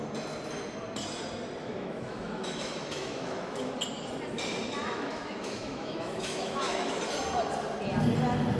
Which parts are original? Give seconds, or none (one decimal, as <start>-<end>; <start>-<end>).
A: 0.0-1.6; 3.7-4.8; 7.0-8.6